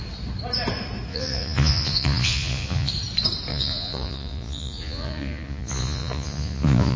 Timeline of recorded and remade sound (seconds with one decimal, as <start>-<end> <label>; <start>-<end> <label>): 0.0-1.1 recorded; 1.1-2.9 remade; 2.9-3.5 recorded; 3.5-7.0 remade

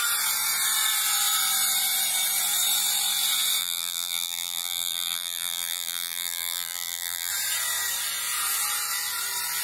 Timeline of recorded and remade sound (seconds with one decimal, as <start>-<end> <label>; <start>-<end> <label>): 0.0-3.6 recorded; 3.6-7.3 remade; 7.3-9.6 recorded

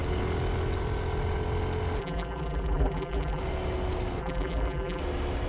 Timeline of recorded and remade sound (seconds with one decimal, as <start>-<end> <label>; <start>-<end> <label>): 0.0-2.0 recorded; 2.0-3.4 remade; 3.4-4.2 recorded; 4.2-5.0 remade; 5.0-5.5 recorded

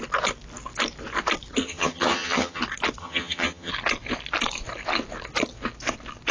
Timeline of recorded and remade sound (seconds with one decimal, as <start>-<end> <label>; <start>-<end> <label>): 0.0-1.6 recorded; 1.6-2.6 remade; 2.6-3.0 recorded; 3.0-3.7 remade; 3.7-6.3 recorded